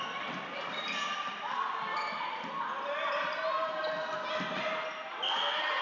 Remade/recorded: recorded